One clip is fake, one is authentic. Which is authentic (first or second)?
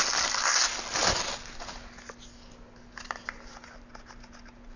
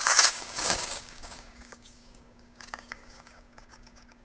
first